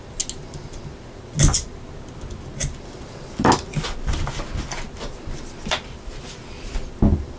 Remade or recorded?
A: recorded